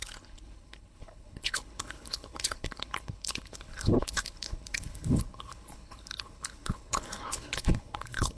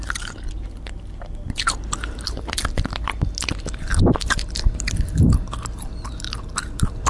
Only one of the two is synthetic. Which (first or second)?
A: first